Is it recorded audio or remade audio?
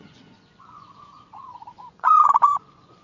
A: remade